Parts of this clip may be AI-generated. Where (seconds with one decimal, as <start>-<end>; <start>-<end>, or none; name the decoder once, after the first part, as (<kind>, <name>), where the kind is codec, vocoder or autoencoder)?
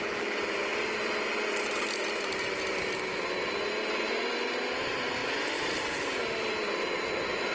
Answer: 5.2-6.2 (vocoder, BigVGAN v2)